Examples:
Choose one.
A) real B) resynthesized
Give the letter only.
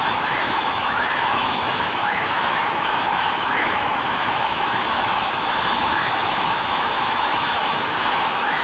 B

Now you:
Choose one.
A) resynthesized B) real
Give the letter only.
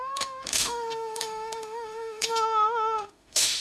A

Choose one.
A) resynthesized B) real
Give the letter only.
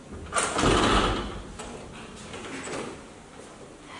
B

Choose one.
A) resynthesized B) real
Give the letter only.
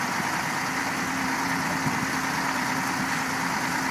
B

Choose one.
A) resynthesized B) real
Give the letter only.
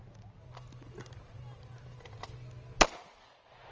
B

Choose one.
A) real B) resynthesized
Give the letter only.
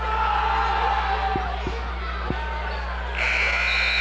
A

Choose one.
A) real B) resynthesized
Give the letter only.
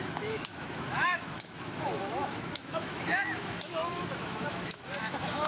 B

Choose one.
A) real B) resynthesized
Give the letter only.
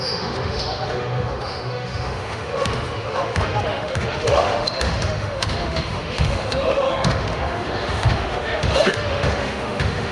B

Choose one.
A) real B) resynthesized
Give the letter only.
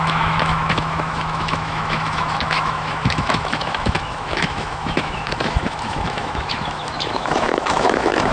B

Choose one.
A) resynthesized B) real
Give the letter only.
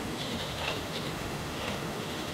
A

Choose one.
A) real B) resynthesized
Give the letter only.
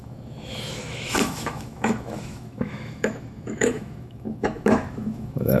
B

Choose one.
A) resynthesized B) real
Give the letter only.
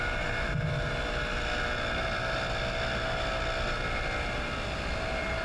B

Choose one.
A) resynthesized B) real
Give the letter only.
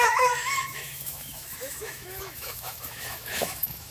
A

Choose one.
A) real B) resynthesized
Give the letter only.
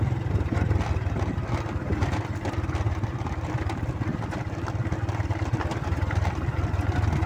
A